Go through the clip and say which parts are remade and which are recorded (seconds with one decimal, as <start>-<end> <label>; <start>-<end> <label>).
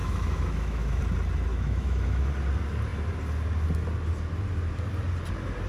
0.0-1.0 remade; 1.0-1.5 recorded; 1.5-2.3 remade; 2.3-5.7 recorded